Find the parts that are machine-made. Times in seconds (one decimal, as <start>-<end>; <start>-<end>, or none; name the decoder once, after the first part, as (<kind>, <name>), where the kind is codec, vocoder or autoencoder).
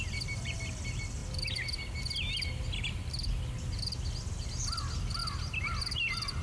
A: none